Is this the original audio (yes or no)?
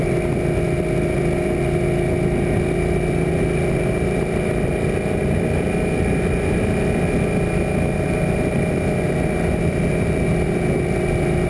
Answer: yes